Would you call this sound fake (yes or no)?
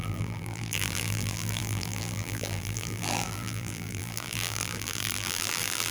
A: yes